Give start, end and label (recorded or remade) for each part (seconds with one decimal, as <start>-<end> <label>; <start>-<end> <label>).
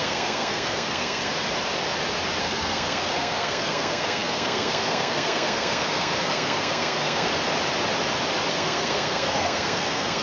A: 0.0-1.3 remade; 1.3-2.4 recorded; 2.4-7.3 remade; 7.3-8.5 recorded; 8.5-10.2 remade